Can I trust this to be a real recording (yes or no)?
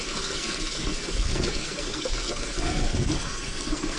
no